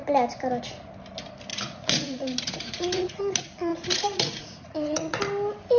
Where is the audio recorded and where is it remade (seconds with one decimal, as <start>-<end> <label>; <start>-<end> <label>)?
0.0-1.5 recorded; 1.5-3.2 remade; 3.2-3.7 recorded; 3.7-5.2 remade; 5.2-5.8 recorded